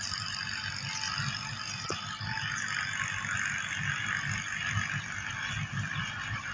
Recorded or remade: recorded